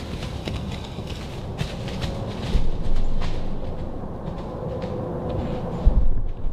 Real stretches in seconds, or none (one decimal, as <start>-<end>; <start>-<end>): 0.0-0.4; 1.2-6.5